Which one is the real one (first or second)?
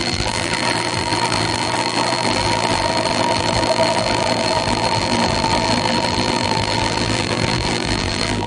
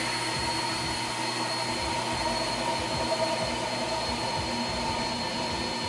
second